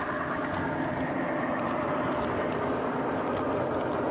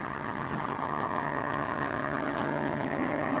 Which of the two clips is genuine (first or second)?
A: first